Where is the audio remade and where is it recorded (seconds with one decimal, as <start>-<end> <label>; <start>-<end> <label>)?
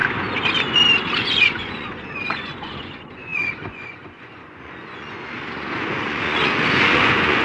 0.0-1.2 recorded; 1.2-7.4 remade